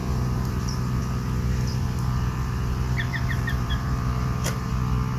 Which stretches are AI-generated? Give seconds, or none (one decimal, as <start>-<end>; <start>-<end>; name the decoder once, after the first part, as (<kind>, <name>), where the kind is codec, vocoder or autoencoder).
0.0-1.0 (vocoder, BigVGAN v2); 1.7-4.7

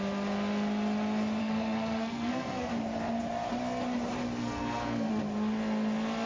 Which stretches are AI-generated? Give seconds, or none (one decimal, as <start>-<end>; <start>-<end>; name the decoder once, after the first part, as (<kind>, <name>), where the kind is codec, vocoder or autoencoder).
1.4-2.7 (codec, SNAC); 4.4-5.1

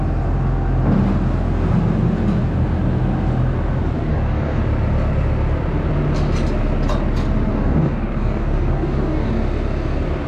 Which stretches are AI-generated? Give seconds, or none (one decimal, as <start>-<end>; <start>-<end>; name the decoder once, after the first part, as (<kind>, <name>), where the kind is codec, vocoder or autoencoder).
4.1-4.6 (codec, DAC); 7.5-9.3

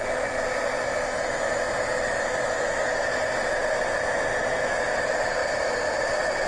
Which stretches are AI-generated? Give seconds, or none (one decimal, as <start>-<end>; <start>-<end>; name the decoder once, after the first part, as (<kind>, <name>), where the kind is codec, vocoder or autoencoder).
none